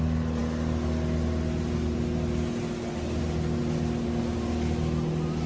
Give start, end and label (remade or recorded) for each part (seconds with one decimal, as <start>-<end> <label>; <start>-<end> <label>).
0.0-5.5 recorded